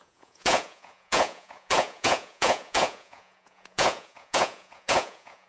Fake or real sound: fake